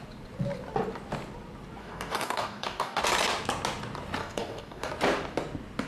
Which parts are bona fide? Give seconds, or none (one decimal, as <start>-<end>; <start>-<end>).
0.0-1.8; 3.0-4.2; 4.9-5.9